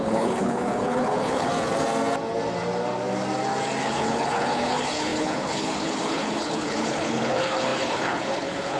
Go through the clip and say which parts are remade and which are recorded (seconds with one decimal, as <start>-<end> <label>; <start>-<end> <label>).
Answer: 0.0-1.5 remade; 1.5-3.8 recorded; 3.8-8.8 remade